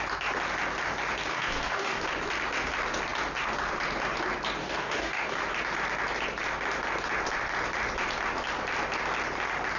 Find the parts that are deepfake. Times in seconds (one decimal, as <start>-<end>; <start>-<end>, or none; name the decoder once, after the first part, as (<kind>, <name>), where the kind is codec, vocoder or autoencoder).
1.3-2.0 (codec, DAC); 4.6-5.4